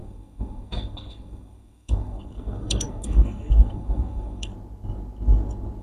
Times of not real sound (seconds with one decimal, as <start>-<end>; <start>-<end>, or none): 0.0-4.5